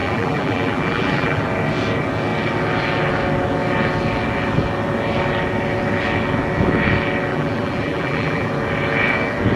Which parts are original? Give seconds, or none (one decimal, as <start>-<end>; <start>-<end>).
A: 1.4-7.3; 8.5-9.6